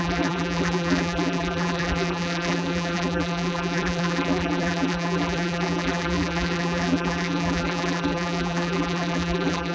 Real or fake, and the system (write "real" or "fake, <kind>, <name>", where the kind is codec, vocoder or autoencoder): fake, vocoder, BigVGAN v2